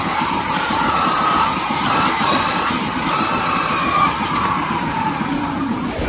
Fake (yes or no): yes